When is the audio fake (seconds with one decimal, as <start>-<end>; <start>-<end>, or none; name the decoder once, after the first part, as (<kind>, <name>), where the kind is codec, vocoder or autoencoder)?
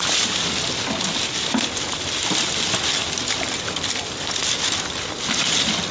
none